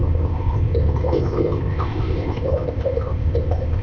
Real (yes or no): no